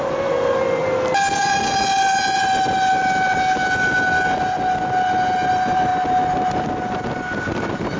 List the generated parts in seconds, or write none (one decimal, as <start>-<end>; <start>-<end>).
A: 0.0-0.8; 5.5-5.9; 7.4-8.0